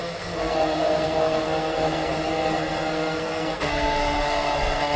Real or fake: fake